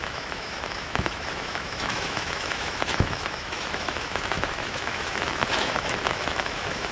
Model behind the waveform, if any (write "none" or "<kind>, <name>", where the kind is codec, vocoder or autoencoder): autoencoder, DAC-VAE